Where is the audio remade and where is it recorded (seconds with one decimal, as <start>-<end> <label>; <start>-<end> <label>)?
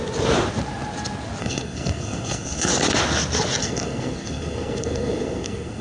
0.0-1.4 recorded; 1.4-2.7 remade; 2.7-3.6 recorded; 3.6-5.8 remade